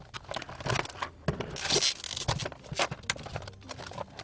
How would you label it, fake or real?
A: real